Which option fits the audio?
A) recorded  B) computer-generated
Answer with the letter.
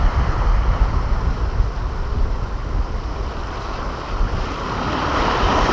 A